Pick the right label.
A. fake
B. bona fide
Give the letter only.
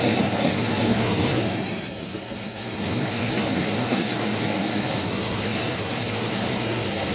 A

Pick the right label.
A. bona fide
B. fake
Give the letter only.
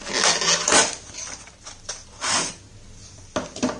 A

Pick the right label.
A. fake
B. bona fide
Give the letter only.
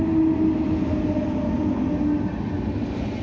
B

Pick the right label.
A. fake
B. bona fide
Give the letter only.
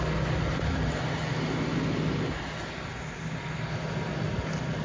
B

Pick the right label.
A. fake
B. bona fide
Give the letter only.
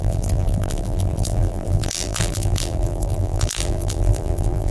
A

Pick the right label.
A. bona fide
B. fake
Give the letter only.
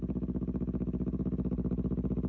A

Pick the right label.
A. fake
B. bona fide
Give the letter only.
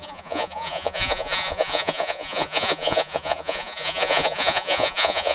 A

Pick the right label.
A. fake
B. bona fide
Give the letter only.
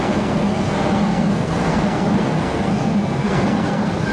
A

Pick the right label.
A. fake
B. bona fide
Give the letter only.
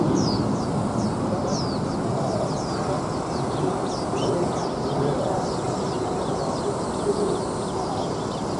B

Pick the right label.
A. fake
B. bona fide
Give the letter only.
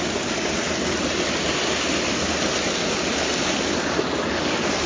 B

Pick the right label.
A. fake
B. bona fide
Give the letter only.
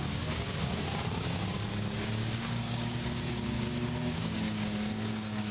A